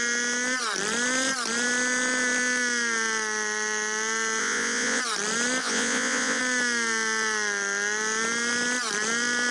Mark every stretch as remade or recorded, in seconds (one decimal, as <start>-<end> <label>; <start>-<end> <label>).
0.0-4.4 recorded; 4.4-5.0 remade; 5.0-5.6 recorded; 5.6-6.4 remade; 6.4-9.5 recorded